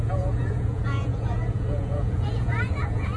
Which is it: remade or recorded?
remade